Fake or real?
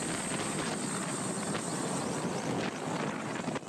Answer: real